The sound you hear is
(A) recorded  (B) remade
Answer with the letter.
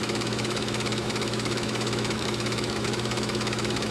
B